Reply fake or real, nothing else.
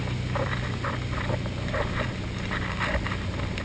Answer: real